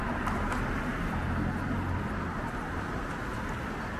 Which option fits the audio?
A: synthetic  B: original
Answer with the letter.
B